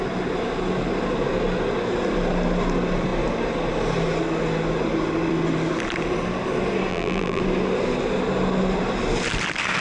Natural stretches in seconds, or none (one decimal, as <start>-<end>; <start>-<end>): 0.0-6.9; 7.4-9.8